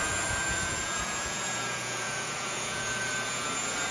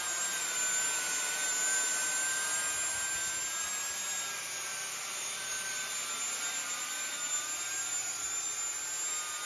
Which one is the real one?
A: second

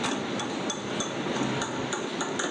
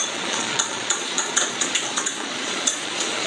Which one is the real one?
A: first